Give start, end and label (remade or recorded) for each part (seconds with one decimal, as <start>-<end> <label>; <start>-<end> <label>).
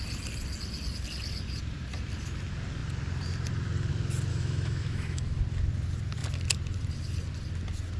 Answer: 0.0-4.3 recorded; 4.3-5.4 remade; 5.4-8.0 recorded